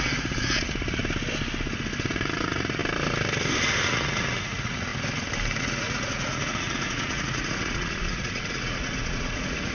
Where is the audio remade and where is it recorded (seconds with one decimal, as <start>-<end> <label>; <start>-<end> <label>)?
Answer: 0.0-1.0 remade; 1.0-2.1 recorded; 2.1-2.8 remade; 2.8-3.8 recorded; 3.8-4.9 remade; 4.9-5.6 recorded; 5.6-9.7 remade